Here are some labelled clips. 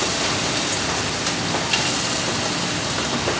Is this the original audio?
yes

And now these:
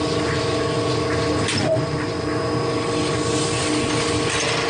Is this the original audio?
yes